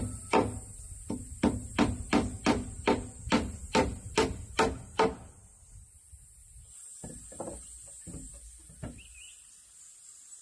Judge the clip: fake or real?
real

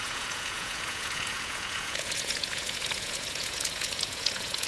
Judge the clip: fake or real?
fake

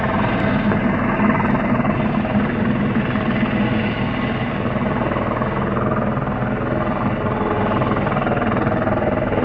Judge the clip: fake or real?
real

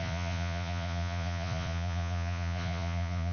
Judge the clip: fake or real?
fake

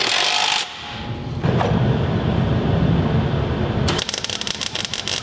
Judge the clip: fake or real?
real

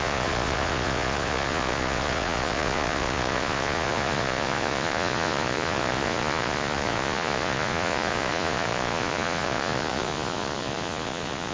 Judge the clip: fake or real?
fake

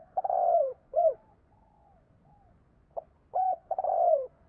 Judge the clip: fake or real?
fake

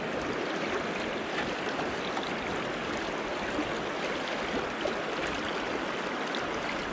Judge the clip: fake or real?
real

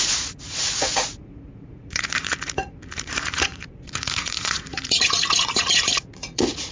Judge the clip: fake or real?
fake